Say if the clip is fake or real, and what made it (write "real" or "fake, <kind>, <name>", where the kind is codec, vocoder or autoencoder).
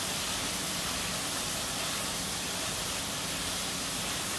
real